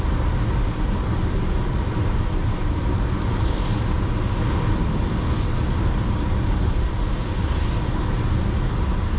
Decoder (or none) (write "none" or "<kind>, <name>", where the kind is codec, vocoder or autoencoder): none